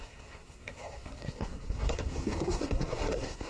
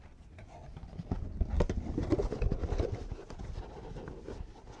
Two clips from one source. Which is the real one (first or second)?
second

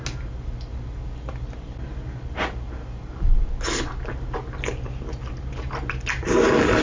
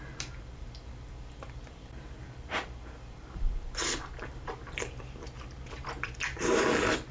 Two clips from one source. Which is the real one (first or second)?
first